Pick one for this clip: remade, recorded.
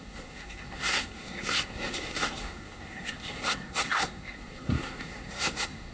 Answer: remade